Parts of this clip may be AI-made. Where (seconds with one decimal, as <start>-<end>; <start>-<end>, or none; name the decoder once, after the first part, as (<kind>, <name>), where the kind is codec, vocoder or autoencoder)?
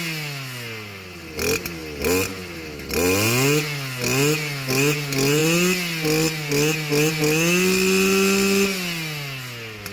none